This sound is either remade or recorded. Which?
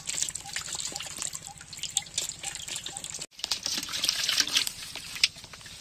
recorded